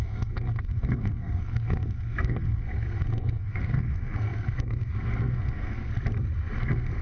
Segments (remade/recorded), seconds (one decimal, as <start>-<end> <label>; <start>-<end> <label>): 0.0-5.9 remade; 5.9-6.6 recorded; 6.6-7.0 remade